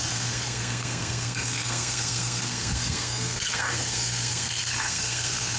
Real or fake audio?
fake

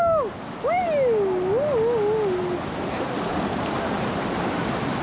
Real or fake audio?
real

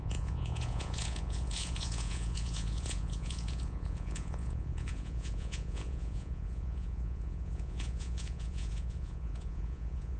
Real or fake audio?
fake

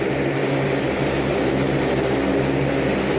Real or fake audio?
real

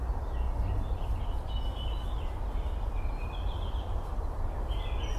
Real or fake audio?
real